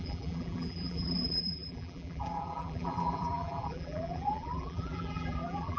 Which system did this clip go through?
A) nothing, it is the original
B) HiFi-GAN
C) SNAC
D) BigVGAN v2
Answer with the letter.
D